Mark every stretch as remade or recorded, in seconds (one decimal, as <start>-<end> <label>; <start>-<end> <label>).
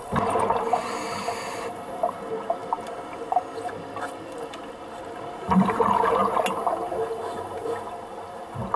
0.0-8.8 recorded